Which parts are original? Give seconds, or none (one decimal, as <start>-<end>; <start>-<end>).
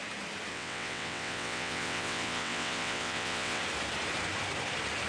0.0-0.5; 3.6-5.1